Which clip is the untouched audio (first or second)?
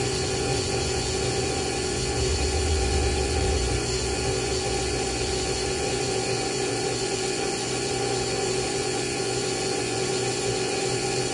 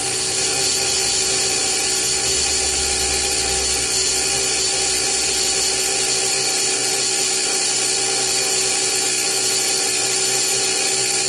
second